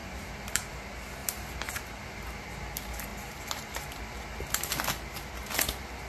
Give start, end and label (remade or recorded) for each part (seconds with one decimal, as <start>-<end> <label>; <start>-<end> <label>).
0.0-0.7 remade; 0.7-1.2 recorded; 1.2-1.7 remade; 1.7-3.1 recorded; 3.1-4.0 remade; 4.0-6.1 recorded